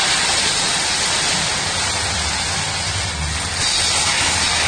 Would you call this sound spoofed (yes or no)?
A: no